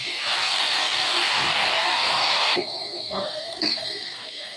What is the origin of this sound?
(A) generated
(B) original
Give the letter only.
A